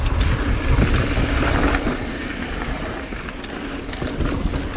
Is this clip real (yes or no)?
yes